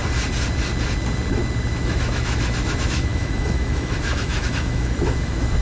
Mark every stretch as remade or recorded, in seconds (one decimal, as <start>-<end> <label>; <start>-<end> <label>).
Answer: 0.0-1.7 recorded; 1.7-5.6 remade